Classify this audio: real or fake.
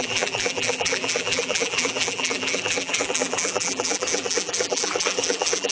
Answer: fake